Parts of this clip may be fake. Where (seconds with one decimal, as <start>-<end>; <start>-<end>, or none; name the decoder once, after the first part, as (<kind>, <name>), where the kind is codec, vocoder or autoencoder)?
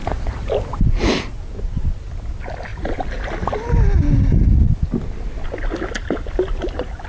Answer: none